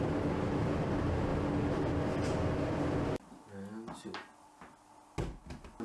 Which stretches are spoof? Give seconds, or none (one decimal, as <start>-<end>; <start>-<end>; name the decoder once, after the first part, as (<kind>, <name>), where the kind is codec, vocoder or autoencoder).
none

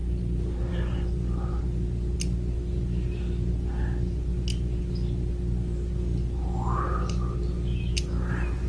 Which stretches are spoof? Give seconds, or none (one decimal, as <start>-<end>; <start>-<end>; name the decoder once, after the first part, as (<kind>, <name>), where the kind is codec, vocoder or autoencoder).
none

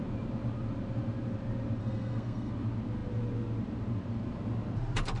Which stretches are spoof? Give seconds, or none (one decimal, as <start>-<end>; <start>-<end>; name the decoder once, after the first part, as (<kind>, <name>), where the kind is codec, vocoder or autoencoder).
1.8-2.5 (codec, SNAC)

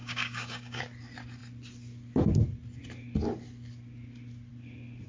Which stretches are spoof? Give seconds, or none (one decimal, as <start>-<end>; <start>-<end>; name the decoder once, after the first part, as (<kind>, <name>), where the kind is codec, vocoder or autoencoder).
0.0-0.8 (codec, DAC)

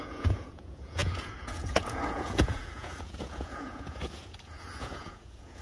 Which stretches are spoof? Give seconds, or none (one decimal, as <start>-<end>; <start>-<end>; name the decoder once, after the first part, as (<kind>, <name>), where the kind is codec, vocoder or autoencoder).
0.0-5.6 (vocoder, Vocos)

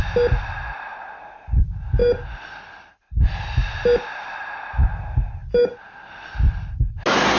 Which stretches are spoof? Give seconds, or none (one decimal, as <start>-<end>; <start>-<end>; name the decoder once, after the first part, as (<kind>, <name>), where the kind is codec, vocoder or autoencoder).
none

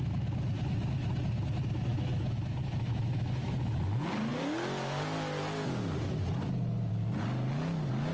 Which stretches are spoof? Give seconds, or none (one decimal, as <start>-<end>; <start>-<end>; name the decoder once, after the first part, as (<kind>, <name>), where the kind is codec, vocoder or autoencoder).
1.9-3.8 (autoencoder, DAC-VAE)